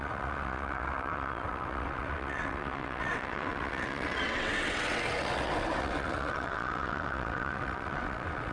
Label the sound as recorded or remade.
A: remade